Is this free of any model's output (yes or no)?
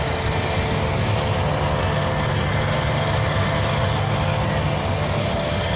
yes